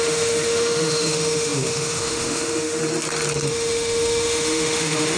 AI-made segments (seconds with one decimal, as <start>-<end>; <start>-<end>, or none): 0.0-2.8; 3.5-5.2